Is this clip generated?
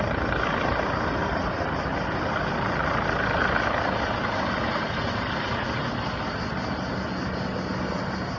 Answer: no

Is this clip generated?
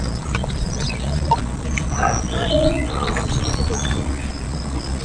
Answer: yes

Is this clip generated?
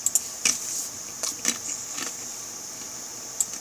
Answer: no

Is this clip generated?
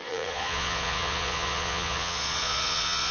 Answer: yes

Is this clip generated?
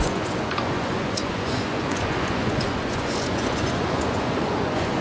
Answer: yes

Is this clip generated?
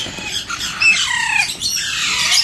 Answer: no